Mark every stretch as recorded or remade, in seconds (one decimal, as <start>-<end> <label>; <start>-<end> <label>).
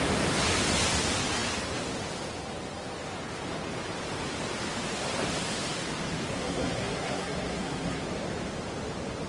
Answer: 0.0-6.3 recorded; 6.3-8.0 remade; 8.0-9.3 recorded